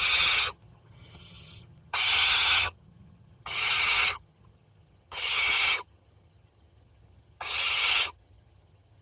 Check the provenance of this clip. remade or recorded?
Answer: remade